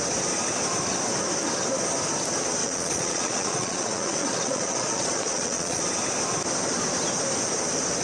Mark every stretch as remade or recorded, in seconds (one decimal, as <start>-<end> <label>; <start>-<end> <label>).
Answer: 0.0-2.6 recorded; 2.6-5.8 remade; 5.8-8.0 recorded

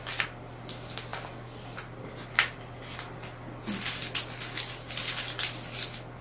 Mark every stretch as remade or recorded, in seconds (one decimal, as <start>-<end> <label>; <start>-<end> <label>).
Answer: 0.0-6.2 recorded

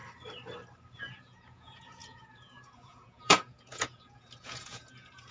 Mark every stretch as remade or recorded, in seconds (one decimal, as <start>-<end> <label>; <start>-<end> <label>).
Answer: 0.0-1.0 recorded; 1.0-5.3 remade

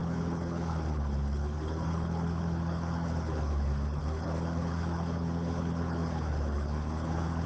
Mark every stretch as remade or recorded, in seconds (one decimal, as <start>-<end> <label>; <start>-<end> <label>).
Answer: 0.0-7.5 remade

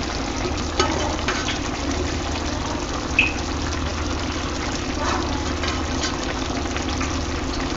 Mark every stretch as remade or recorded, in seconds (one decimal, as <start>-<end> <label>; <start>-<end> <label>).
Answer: 0.0-1.4 recorded; 1.4-2.2 remade; 2.2-7.8 recorded

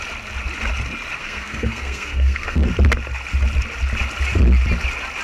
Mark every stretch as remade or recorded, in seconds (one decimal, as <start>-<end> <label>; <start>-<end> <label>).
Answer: 0.0-1.2 recorded; 1.2-2.7 remade; 2.7-5.2 recorded

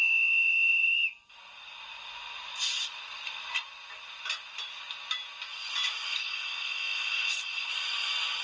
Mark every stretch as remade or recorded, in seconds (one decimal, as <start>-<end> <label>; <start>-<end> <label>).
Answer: 0.0-6.2 recorded; 6.2-7.7 remade; 7.7-8.4 recorded

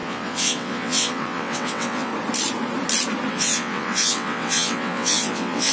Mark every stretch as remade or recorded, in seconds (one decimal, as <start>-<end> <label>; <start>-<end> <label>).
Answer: 0.0-2.1 remade; 2.1-3.3 recorded; 3.3-5.7 remade